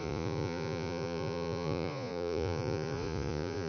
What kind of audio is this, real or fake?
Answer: fake